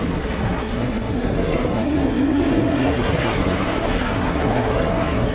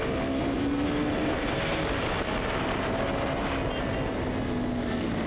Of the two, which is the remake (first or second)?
first